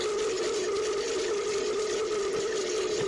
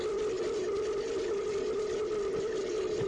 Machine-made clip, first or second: first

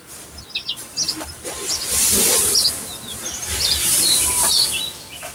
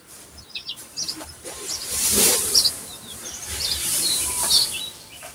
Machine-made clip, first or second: second